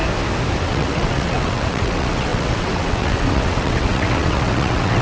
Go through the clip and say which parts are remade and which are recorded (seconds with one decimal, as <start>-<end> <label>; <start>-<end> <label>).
0.0-0.6 recorded; 0.6-5.0 remade